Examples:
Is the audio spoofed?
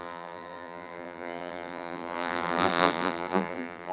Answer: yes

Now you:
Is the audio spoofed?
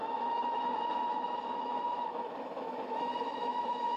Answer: yes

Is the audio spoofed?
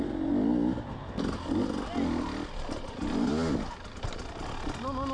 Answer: no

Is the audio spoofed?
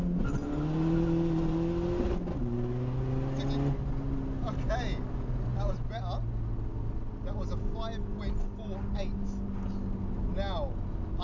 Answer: no